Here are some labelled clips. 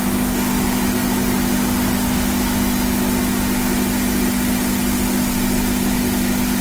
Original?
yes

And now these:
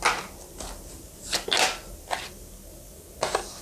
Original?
yes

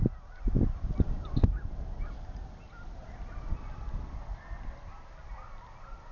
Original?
yes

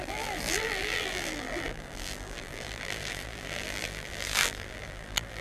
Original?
no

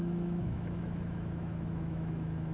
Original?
no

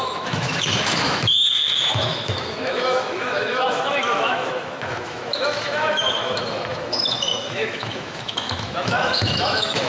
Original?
no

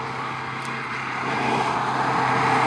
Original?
yes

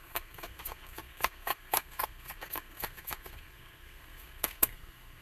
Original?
no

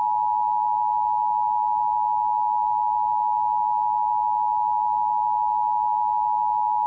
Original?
yes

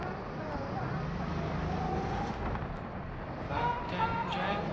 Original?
yes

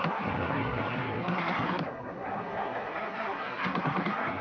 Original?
no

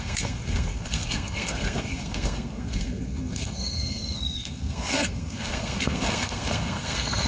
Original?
no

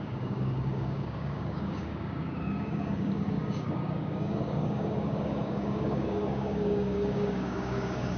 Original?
no